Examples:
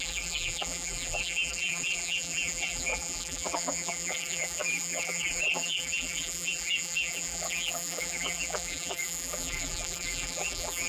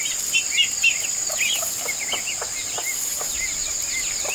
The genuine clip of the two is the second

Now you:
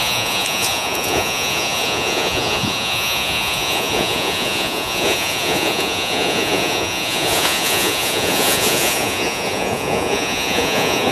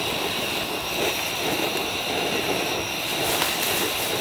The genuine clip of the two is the second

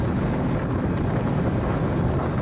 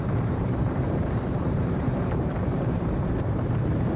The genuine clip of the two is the first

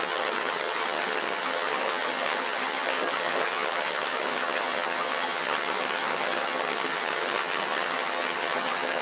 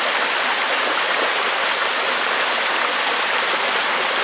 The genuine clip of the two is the second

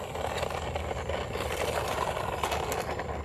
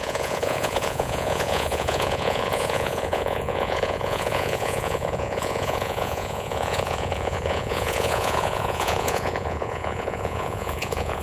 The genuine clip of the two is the first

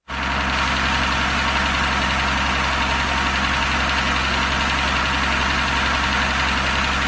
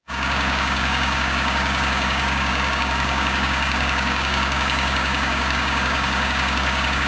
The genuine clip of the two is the first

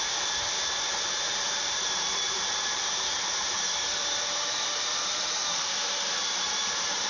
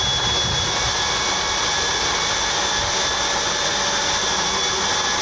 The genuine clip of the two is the second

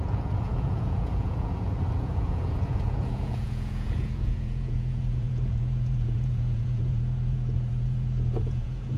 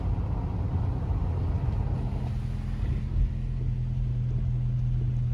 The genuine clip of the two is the second